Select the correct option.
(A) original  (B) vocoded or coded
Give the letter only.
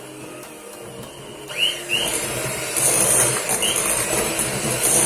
A